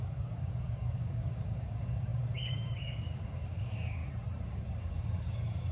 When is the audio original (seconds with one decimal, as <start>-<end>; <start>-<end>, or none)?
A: 4.0-4.5